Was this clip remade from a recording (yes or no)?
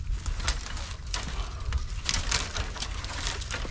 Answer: no